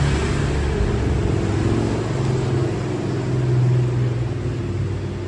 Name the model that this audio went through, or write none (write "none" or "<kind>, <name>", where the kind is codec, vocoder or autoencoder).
none